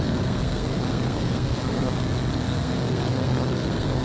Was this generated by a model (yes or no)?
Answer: yes